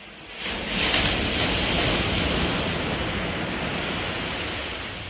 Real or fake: real